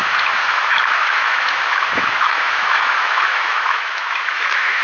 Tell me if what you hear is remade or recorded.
remade